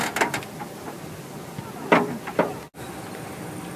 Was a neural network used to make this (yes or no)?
no